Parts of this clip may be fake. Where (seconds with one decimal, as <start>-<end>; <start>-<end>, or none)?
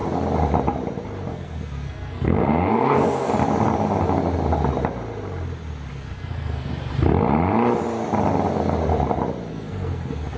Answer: 1.3-3.3; 5.9-6.7; 9.5-10.4